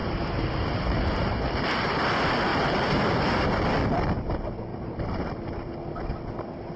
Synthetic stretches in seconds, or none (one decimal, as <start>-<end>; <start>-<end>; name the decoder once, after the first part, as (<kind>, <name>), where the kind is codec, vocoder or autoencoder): 0.0-1.3 (vocoder, BigVGAN v2); 2.5-3.5; 4.7-5.7